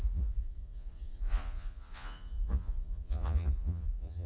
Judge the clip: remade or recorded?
remade